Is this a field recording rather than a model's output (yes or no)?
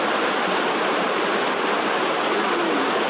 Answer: no